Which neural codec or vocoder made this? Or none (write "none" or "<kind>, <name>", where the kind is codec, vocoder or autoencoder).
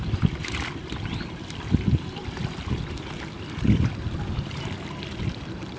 none